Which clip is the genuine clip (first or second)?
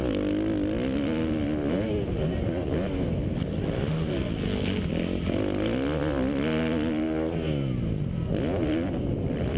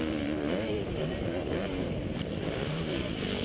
first